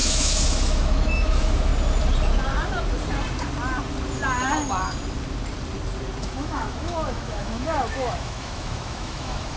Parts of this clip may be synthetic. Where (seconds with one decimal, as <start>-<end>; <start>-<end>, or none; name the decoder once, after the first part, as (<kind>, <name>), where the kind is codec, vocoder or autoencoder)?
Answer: 0.0-1.7 (autoencoder, DAC-VAE); 6.2-9.6